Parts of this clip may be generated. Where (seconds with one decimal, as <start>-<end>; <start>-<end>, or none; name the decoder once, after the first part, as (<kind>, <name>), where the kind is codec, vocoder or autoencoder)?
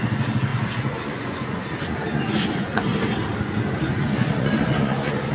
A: 0.0-2.9 (vocoder, Vocos); 3.4-5.3